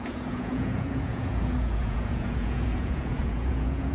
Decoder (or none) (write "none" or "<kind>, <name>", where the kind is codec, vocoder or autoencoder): vocoder, Vocos